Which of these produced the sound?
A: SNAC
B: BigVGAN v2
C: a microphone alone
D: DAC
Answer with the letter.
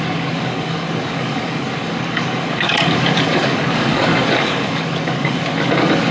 D